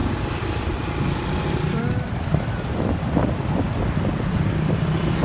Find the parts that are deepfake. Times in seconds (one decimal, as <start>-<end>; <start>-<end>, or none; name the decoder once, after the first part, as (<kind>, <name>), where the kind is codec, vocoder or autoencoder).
none